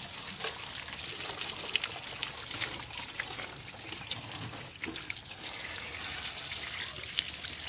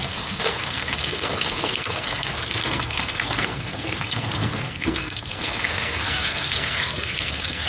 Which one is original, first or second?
first